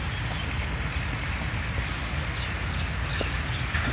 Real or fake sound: real